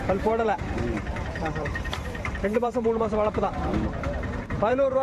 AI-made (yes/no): yes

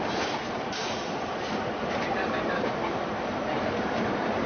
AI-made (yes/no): yes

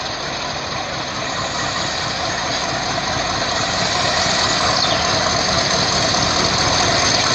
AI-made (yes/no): no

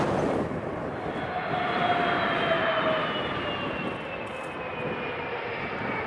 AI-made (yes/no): no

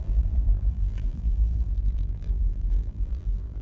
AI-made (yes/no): yes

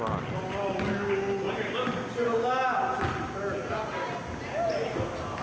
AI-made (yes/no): no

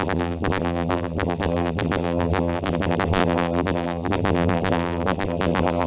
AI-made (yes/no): yes